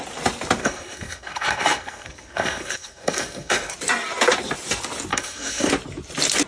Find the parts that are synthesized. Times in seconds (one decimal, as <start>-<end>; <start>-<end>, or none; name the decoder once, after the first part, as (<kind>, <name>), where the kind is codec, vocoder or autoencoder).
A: 0.6-3.7 (codec, SNAC); 5.1-5.7

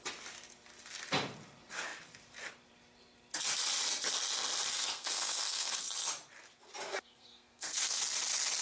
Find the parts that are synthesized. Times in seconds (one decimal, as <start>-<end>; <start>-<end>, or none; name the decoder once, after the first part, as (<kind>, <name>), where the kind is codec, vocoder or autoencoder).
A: 4.7-5.8 (codec, SNAC); 6.9-8.0